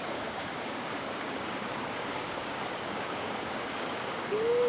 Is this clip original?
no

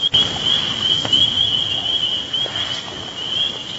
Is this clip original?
yes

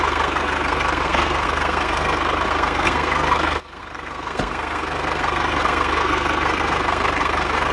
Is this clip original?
no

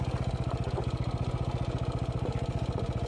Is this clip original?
yes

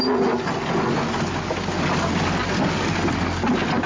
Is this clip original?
yes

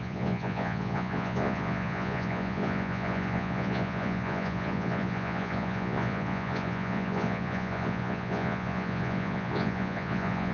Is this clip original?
no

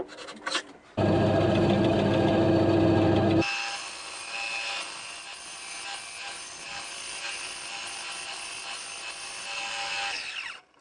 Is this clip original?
yes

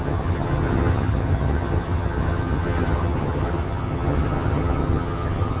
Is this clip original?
no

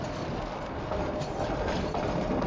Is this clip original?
yes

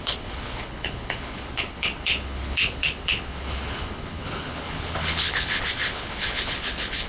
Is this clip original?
no